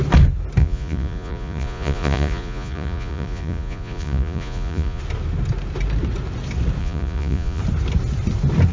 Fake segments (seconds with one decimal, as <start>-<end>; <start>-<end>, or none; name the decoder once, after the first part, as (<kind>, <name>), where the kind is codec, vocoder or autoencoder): 0.6-5.0 (vocoder, Vocos); 6.8-7.6